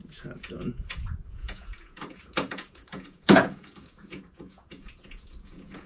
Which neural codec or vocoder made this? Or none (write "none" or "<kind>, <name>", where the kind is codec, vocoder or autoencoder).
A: vocoder, Vocos